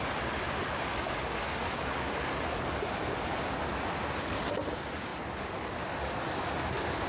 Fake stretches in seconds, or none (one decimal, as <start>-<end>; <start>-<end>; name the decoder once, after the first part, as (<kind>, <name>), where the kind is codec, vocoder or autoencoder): 0.9-2.1 (codec, DAC)